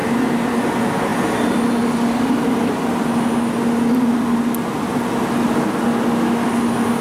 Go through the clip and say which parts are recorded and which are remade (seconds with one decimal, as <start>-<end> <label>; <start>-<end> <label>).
0.0-7.0 recorded